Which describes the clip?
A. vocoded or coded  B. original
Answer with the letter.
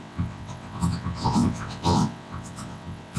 A